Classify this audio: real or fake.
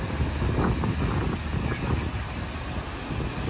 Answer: real